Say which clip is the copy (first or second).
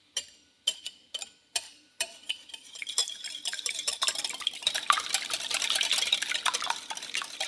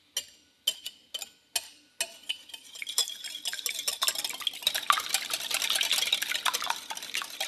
first